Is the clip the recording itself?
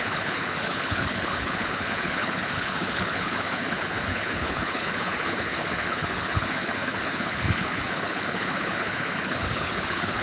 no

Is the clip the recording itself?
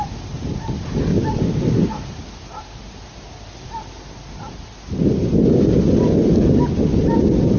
yes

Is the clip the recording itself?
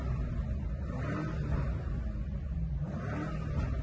yes